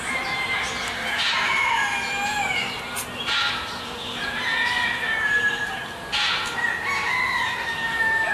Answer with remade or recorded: recorded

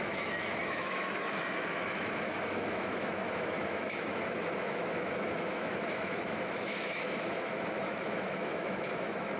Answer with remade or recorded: remade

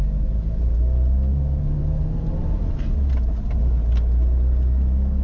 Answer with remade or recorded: recorded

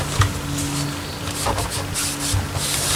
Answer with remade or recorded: recorded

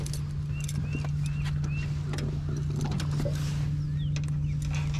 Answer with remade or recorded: recorded